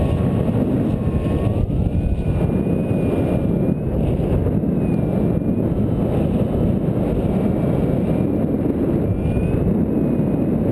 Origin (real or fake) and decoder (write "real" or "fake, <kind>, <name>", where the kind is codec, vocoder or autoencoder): real